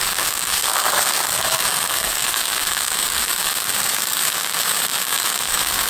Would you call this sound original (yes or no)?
no